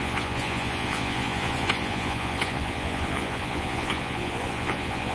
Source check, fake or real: fake